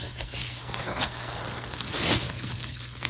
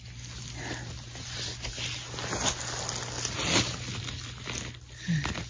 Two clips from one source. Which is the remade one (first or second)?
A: first